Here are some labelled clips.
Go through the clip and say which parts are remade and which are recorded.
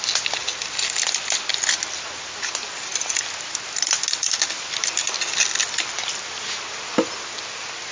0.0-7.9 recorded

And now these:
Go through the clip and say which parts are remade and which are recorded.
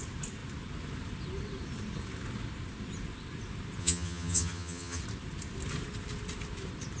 0.0-3.8 recorded; 3.8-5.0 remade; 5.0-7.0 recorded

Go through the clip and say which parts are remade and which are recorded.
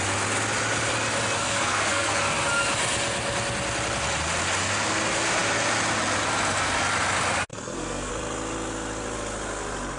0.0-1.4 recorded; 1.4-2.1 remade; 2.1-7.5 recorded; 7.5-8.1 remade; 8.1-10.0 recorded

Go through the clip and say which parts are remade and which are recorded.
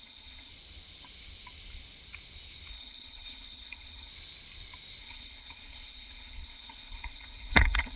0.0-0.5 remade; 0.5-2.7 recorded; 2.7-4.1 remade; 4.1-5.0 recorded; 5.0-8.0 remade